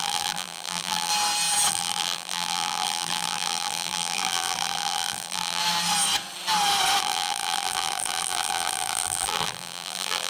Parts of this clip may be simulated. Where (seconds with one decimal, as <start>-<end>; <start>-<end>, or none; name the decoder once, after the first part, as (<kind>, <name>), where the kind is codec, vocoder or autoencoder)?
0.0-1.1 (vocoder, BigVGAN v2); 1.7-5.6; 7.0-10.3